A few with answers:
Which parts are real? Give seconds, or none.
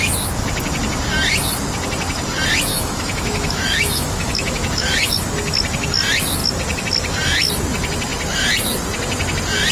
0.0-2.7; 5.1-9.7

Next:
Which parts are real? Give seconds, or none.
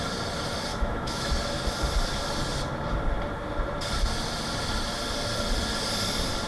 0.0-0.7; 1.3-6.5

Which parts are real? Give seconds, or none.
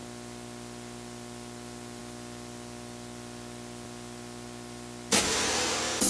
0.0-6.1